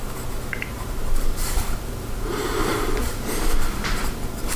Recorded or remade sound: remade